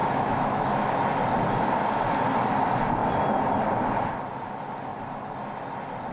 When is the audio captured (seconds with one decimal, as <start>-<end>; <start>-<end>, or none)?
1.0-6.1